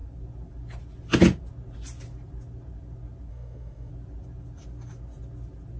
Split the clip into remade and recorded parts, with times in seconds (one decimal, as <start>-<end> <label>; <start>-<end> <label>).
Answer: 0.0-3.3 recorded; 3.3-3.9 remade; 3.9-5.8 recorded